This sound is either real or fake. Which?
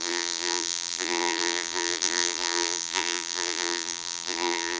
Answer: fake